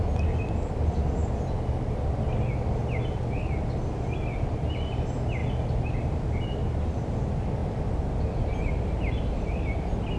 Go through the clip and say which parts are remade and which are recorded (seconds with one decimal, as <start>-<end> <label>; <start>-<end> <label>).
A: 0.0-10.2 recorded

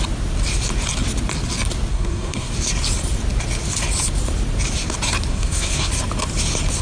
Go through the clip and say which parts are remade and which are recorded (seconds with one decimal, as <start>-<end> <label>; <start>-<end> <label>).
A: 0.0-1.9 recorded; 1.9-2.5 remade; 2.5-5.3 recorded; 5.3-5.9 remade; 5.9-6.8 recorded

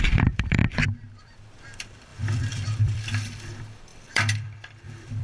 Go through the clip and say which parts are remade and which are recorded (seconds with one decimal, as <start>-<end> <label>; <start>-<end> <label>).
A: 0.0-0.6 remade; 0.6-1.2 recorded; 1.2-5.2 remade